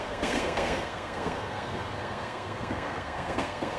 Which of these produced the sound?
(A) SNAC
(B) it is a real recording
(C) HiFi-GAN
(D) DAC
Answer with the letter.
A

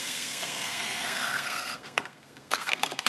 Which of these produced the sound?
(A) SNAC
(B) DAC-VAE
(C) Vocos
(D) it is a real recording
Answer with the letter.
A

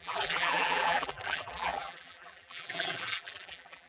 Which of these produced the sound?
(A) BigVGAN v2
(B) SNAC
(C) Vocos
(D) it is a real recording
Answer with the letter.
A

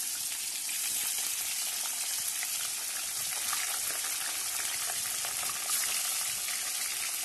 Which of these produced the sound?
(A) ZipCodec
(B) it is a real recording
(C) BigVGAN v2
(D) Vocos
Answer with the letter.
B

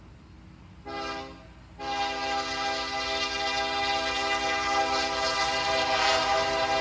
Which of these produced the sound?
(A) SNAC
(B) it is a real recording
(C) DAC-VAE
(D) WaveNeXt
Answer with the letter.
B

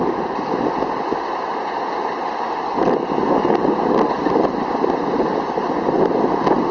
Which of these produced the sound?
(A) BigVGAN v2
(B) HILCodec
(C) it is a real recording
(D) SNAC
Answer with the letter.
C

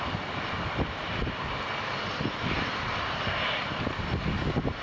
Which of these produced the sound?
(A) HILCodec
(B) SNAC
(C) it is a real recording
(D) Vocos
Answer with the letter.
C